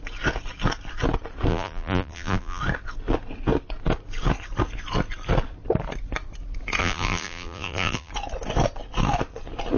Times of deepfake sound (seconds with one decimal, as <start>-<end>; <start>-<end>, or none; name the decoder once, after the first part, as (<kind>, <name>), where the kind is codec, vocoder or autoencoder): 1.5-2.6 (vocoder, BigVGAN v2); 6.8-8.1